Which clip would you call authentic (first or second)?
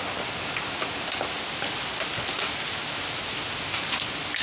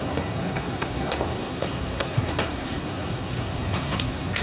first